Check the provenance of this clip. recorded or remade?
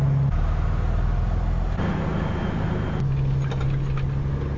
recorded